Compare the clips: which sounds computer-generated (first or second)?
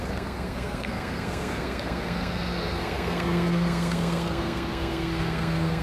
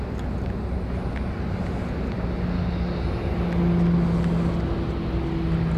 first